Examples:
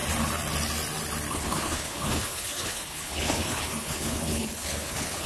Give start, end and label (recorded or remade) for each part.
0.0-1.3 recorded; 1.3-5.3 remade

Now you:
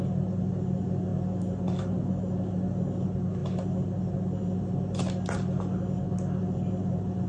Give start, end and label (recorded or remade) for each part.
0.0-7.3 recorded

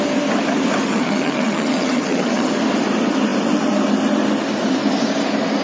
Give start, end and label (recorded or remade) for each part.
0.0-0.9 recorded; 0.9-2.5 remade; 2.5-5.6 recorded

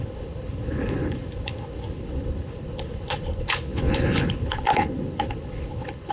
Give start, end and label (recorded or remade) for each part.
0.0-6.1 remade

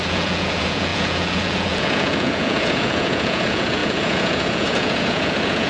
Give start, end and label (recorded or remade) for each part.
0.0-5.7 remade

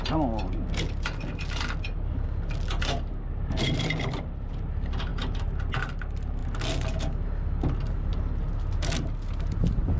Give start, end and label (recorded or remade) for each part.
0.0-10.0 recorded

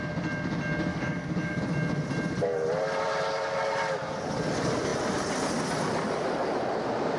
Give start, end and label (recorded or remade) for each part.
0.0-0.9 recorded; 0.9-1.6 remade; 1.6-7.2 recorded

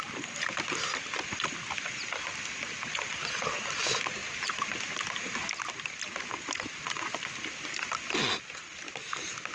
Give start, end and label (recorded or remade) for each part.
0.0-9.5 recorded